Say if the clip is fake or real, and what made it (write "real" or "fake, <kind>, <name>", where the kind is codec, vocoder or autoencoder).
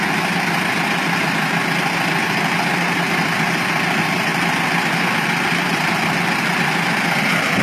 real